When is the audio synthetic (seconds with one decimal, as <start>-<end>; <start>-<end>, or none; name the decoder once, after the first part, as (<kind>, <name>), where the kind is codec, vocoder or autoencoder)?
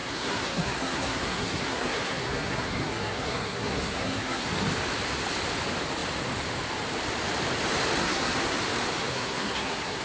0.0-4.5 (codec, SNAC); 8.0-8.6; 9.1-10.0